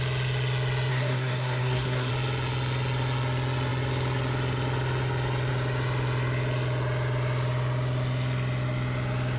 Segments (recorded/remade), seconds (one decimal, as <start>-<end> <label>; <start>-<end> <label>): 0.0-0.9 recorded; 0.9-2.1 remade; 2.1-9.4 recorded